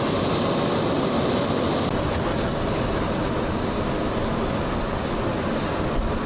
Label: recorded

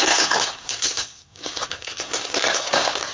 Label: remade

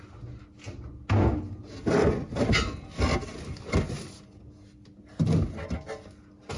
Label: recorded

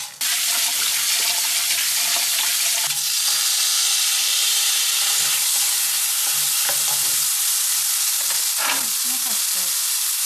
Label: recorded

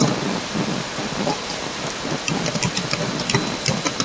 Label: recorded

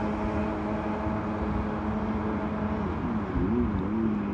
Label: recorded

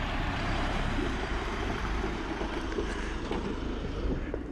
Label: remade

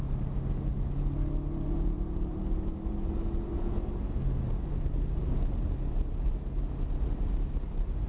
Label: recorded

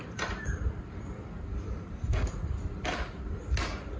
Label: recorded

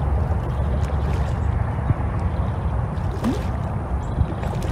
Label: recorded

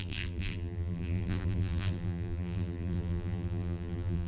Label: remade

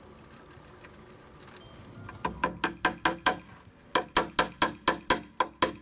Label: recorded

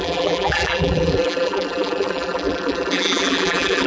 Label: remade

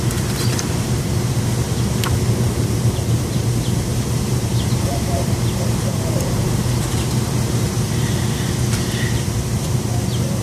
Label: remade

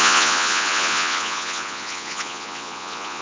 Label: remade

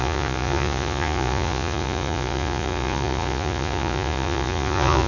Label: remade